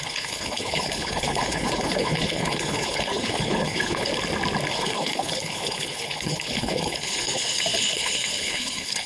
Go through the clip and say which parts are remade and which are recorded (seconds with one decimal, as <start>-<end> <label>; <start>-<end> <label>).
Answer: 0.0-4.1 remade; 4.1-4.7 recorded; 4.7-9.1 remade